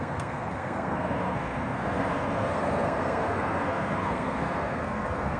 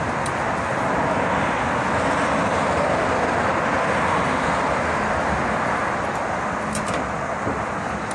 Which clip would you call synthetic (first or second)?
first